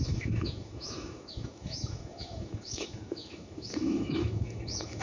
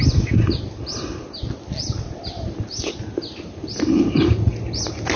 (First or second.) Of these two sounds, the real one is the second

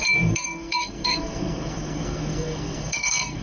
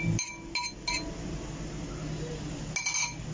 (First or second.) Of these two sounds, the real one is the second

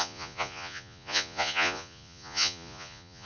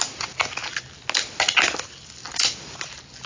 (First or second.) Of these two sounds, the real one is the second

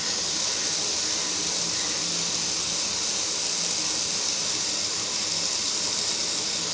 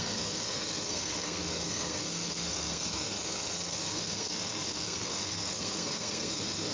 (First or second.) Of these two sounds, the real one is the first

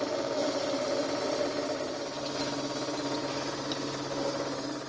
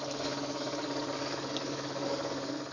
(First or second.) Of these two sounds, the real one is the first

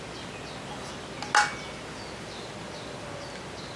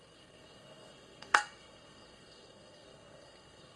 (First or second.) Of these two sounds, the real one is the first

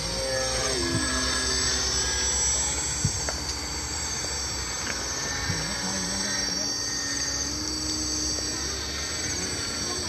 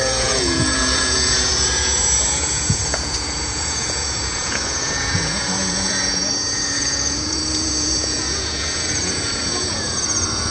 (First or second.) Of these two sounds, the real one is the first